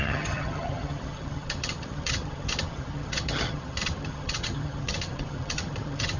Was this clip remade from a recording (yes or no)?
yes